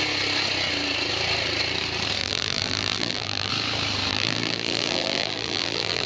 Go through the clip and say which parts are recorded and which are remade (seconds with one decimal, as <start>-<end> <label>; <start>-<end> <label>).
0.0-2.2 recorded; 2.2-3.5 remade; 3.5-4.1 recorded; 4.1-6.1 remade